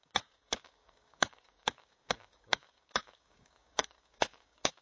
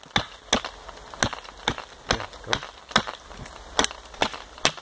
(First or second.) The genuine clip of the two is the second